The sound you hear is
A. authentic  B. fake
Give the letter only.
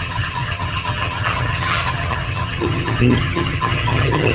B